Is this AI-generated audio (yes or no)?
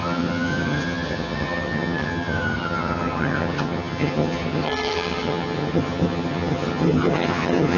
yes